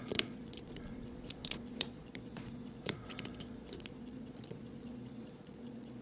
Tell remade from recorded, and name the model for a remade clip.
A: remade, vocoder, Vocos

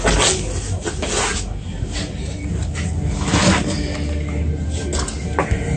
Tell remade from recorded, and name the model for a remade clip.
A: recorded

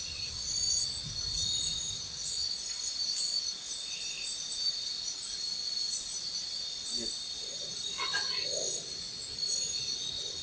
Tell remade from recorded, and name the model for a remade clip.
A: recorded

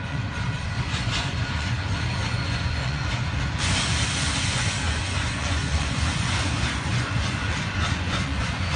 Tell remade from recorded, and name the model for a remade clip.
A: remade, vocoder, Vocos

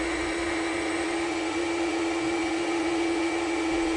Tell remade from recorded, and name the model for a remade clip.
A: remade, vocoder, Vocos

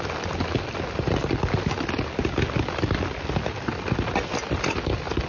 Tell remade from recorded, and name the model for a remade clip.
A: recorded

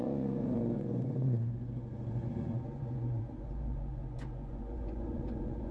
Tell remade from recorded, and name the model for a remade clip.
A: remade, vocoder, Vocos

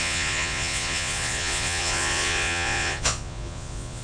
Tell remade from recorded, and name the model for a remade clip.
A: remade, vocoder, Vocos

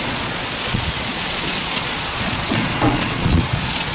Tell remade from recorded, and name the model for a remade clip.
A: remade, vocoder, Vocos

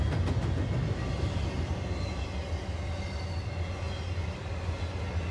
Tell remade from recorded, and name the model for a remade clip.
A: recorded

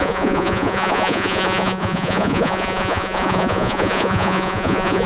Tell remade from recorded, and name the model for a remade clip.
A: remade, vocoder, Vocos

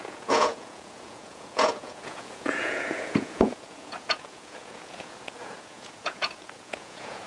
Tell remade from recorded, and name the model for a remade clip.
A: remade, vocoder, Vocos